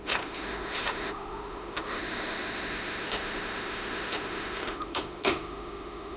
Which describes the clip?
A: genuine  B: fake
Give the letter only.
B